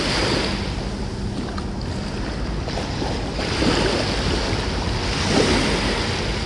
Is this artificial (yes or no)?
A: no